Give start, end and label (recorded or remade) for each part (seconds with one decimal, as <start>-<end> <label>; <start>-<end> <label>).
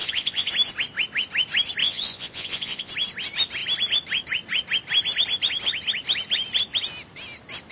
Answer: 0.0-0.5 remade; 0.5-1.8 recorded; 1.8-2.9 remade; 2.9-7.7 recorded